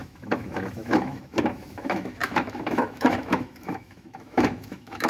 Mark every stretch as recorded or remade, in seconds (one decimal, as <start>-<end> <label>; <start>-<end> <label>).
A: 0.0-5.1 remade